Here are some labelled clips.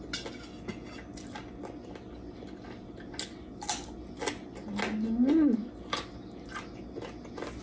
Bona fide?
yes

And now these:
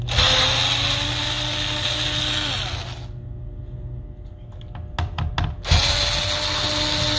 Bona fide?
yes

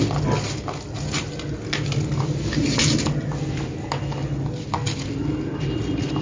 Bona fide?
yes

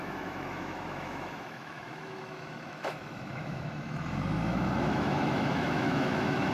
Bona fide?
no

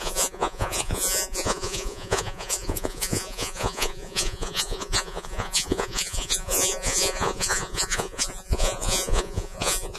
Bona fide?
no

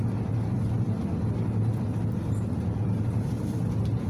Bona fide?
yes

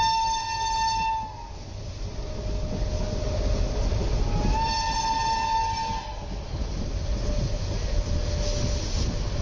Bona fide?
yes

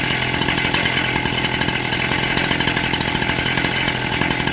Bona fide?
yes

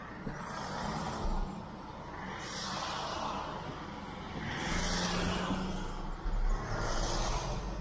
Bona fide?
yes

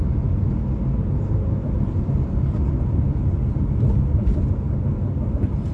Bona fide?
yes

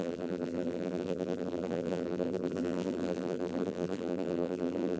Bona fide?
no